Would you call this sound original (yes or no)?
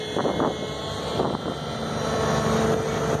yes